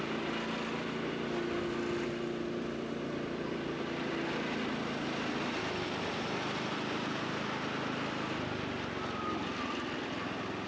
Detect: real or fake real